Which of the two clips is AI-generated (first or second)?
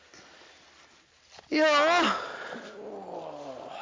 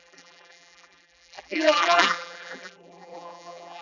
second